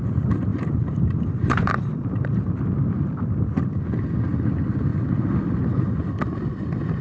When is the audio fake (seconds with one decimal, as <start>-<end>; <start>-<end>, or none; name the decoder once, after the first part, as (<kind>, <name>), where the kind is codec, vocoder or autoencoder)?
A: 0.5-2.5 (vocoder, BigVGAN v2)